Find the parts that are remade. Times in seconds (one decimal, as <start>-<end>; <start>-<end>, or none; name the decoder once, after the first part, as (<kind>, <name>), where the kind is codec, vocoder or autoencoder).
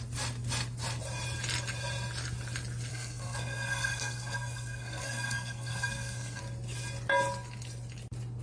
2.9-6.4 (codec, SNAC)